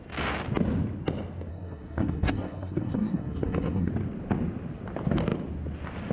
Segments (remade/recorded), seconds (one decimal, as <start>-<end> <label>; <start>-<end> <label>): 0.0-1.5 recorded; 1.5-3.9 remade; 3.9-6.1 recorded